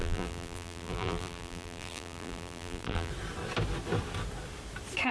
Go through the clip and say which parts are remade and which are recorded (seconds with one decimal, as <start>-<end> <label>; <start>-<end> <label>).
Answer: 0.0-3.1 remade; 3.1-5.1 recorded